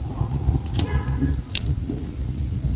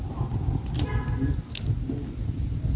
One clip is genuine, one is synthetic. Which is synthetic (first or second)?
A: first